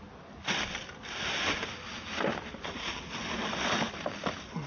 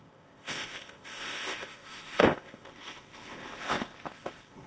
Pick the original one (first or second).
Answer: first